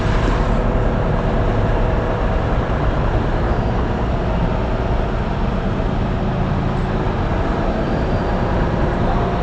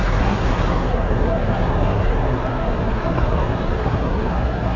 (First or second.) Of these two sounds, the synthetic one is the second